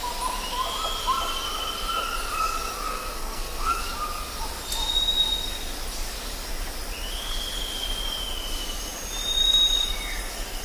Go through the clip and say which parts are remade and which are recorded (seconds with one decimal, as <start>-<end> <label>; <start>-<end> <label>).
0.0-2.9 recorded; 2.9-3.8 remade; 3.8-10.6 recorded